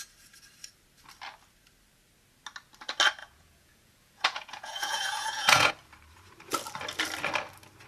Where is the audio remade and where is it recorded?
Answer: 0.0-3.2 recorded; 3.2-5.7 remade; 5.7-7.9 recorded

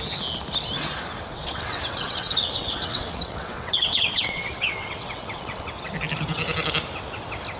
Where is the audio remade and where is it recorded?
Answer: 0.0-1.3 recorded; 1.3-5.7 remade; 5.7-7.6 recorded

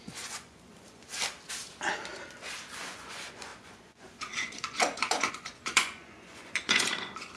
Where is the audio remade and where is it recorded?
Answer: 0.0-1.1 remade; 1.1-2.8 recorded; 2.8-7.4 remade